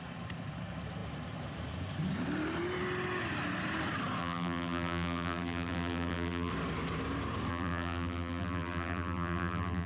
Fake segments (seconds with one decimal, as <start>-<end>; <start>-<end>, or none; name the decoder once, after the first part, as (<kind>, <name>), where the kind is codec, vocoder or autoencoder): 4.2-6.5 (vocoder, BigVGAN v2); 7.5-9.9